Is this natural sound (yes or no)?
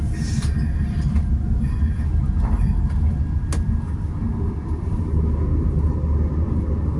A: yes